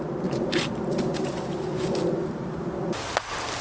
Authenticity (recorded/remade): recorded